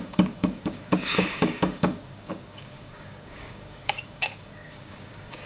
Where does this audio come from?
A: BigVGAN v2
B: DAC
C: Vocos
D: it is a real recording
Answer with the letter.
B